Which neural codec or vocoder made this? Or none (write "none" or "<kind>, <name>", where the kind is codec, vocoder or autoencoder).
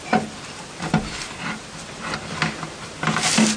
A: none